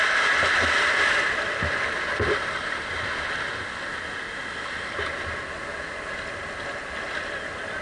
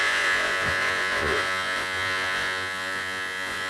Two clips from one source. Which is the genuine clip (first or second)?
first